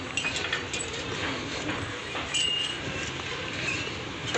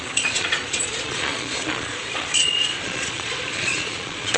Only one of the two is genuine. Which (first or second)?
first